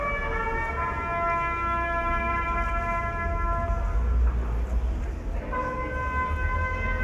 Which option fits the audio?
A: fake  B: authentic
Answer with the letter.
B